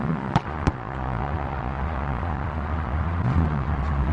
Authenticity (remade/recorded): remade